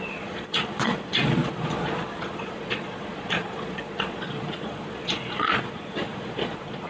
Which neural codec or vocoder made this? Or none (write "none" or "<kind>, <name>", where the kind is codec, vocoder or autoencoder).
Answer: vocoder, Vocos